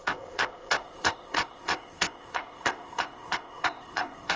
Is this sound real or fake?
fake